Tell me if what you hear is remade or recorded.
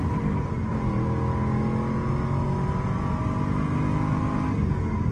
recorded